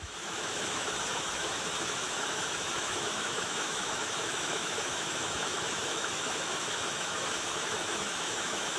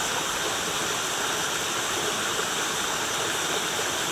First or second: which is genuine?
second